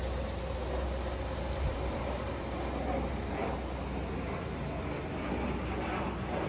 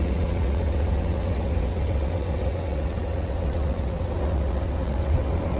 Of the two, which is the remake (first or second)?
second